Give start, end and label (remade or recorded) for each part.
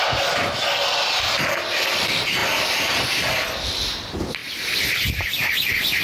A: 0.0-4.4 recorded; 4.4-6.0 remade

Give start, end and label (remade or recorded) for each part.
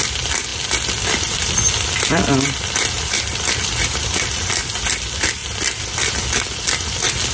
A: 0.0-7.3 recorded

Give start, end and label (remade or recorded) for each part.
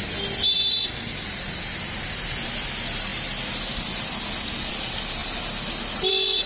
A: 0.0-6.5 recorded